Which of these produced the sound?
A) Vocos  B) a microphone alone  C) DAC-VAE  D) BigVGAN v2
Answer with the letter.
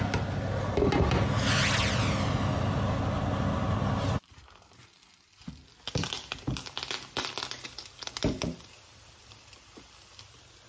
B